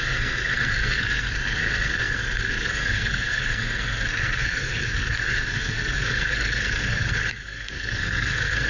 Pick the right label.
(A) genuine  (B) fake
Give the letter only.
B